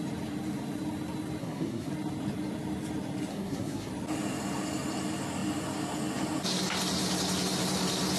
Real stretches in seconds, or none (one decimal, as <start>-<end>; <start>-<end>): 0.0-1.4; 1.9-3.3; 3.9-8.2